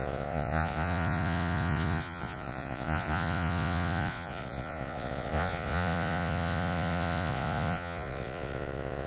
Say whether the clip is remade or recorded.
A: remade